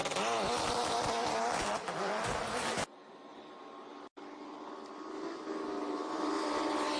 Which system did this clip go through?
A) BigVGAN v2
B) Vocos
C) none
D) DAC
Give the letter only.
C